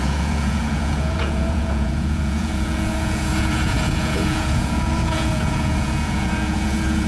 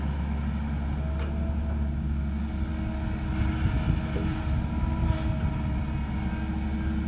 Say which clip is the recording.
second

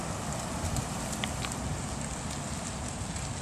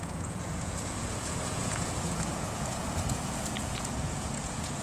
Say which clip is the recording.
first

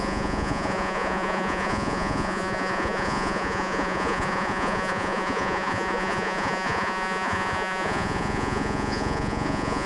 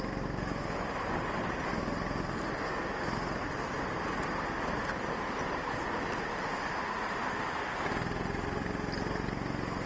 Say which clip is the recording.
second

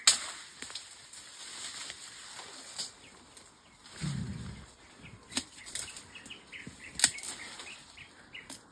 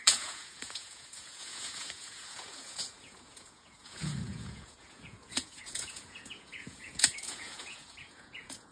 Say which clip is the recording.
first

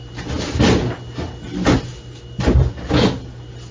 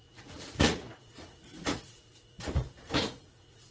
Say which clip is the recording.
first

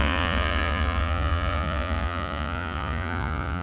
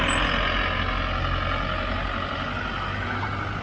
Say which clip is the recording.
second